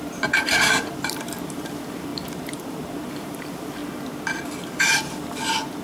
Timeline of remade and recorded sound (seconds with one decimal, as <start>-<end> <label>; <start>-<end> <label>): 0.0-3.8 remade; 3.8-4.7 recorded; 4.7-5.8 remade

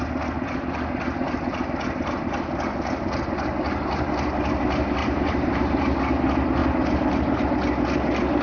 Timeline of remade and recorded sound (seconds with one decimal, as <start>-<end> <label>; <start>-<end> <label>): 0.0-5.0 recorded; 5.0-6.0 remade; 6.0-6.6 recorded; 6.6-7.4 remade; 7.4-8.4 recorded

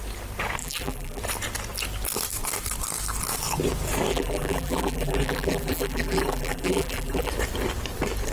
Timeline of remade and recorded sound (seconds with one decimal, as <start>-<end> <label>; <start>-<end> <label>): 0.0-0.6 recorded; 0.6-1.2 remade; 1.2-4.1 recorded; 4.1-7.3 remade; 7.3-8.3 recorded

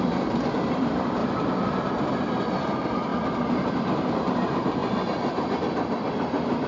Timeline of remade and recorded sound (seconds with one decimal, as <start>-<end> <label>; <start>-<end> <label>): 0.0-1.2 recorded; 1.2-1.8 remade; 1.8-6.7 recorded

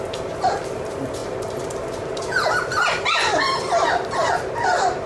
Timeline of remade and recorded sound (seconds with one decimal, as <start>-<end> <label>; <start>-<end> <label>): 0.0-5.1 recorded

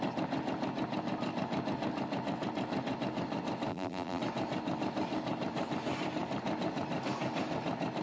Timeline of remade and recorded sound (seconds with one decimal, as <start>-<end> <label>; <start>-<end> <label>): 0.0-3.7 recorded; 3.7-4.2 remade; 4.2-8.0 recorded